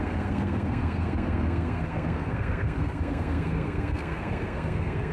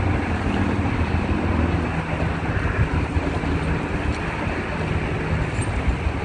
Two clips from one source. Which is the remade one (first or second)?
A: first